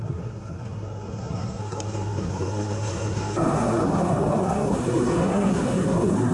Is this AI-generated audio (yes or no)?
yes